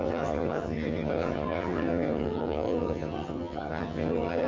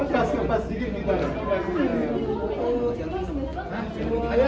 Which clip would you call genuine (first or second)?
second